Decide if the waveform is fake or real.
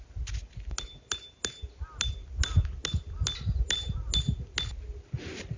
real